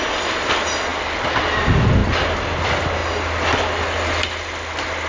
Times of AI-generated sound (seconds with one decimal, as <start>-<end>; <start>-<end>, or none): none

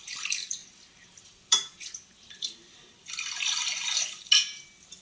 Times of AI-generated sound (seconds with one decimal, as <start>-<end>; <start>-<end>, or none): 0.6-3.6

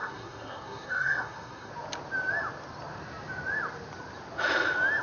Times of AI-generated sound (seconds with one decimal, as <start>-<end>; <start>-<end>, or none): 0.0-1.7